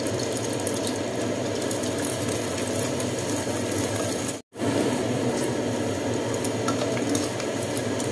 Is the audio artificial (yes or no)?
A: no